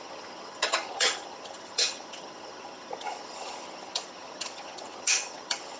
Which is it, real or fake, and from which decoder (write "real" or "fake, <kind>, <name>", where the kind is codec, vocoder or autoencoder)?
fake, vocoder, HiFi-GAN